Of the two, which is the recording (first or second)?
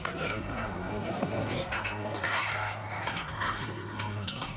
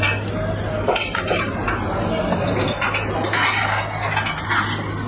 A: second